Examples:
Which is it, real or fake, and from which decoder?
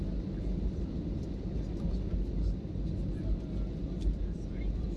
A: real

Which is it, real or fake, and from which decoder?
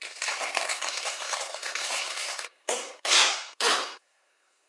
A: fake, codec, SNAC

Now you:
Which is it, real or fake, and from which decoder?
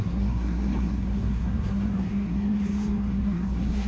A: fake, codec, SNAC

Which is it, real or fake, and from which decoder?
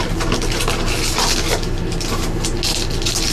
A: real